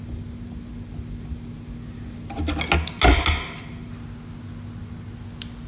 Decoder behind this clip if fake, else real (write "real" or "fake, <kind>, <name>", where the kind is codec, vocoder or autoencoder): real